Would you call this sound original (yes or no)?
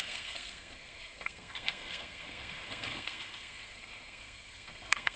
no